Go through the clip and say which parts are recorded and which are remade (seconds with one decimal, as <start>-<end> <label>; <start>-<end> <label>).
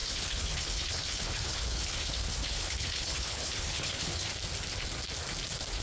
0.0-4.3 remade; 4.3-5.8 recorded